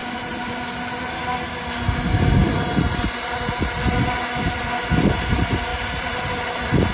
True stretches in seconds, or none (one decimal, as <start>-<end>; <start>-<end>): 0.5-5.7; 6.3-6.9

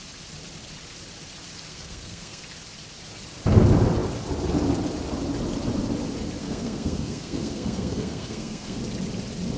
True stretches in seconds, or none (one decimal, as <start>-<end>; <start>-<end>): 0.0-1.7; 2.4-6.4; 8.8-9.6

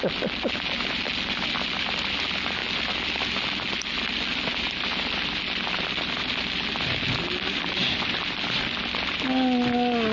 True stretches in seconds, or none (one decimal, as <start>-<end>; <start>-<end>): 0.0-10.1

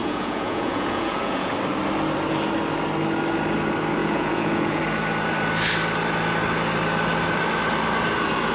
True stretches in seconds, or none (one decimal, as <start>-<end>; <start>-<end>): 1.5-4.0; 4.8-8.5

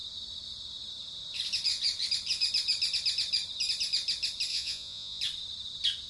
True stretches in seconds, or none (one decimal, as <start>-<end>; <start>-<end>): 0.0-4.5; 5.2-6.1

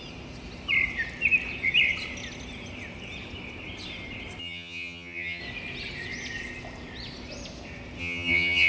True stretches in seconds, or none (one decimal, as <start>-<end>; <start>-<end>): 0.0-4.4; 5.4-8.0

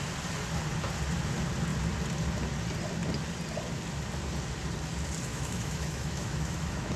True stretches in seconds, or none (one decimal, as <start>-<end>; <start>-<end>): 0.0-5.3

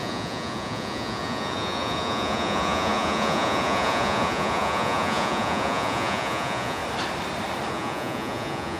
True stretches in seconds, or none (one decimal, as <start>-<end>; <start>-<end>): 6.8-7.7